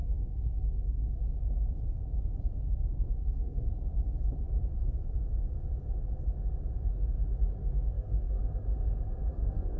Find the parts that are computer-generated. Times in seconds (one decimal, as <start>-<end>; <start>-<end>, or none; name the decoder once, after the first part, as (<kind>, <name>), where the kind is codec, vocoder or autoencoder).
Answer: 0.0-1.2 (codec, SNAC); 2.7-3.7; 7.6-8.4; 9.3-9.8